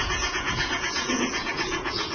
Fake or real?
fake